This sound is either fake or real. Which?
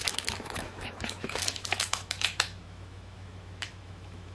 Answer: fake